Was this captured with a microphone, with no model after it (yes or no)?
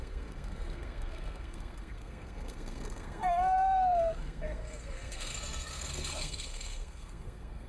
no